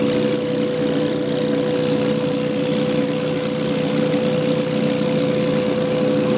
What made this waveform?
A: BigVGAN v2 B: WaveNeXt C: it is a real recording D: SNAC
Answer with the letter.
C